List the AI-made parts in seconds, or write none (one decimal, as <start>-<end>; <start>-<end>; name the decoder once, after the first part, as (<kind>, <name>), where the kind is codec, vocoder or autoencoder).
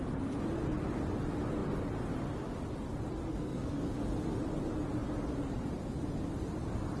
3.3-3.8 (codec, SNAC)